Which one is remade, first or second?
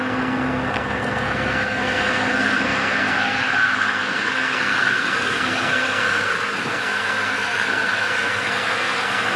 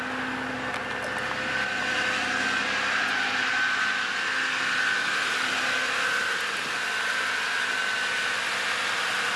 first